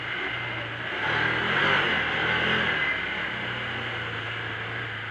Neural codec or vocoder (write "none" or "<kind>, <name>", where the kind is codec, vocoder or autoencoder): none